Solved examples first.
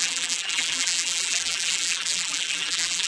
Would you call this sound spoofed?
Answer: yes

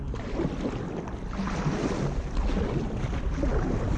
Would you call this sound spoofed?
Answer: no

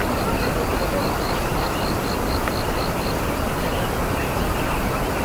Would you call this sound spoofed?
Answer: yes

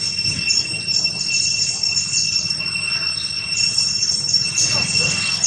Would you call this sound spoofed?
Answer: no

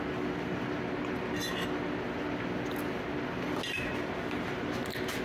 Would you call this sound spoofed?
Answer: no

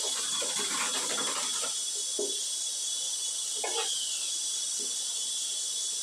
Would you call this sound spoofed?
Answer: yes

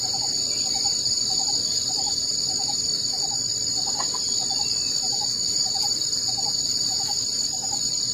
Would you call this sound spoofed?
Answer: yes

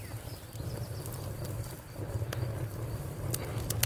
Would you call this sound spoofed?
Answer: no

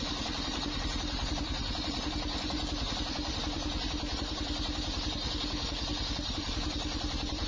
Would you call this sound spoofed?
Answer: yes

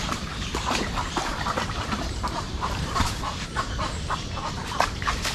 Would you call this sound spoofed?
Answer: yes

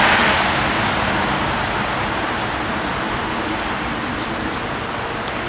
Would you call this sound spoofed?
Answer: no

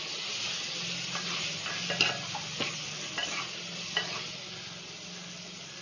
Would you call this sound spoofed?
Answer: no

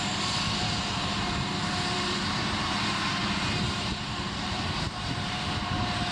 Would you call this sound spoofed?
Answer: yes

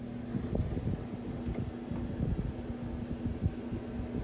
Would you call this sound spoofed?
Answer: no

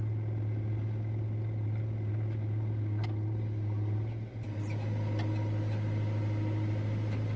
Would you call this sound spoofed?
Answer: no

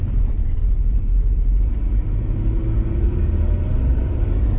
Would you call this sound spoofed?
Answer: yes